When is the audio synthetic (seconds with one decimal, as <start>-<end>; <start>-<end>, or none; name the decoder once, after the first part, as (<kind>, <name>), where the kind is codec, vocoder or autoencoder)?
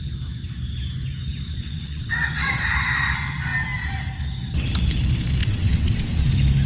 1.6-2.6 (vocoder, WaveNeXt); 5.4-6.3